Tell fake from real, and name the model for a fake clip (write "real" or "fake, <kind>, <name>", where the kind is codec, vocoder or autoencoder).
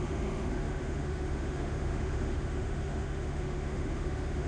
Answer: fake, autoencoder, DAC-VAE